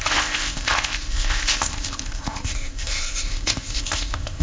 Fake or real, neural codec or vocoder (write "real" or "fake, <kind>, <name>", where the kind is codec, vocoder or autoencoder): fake, codec, ZipCodec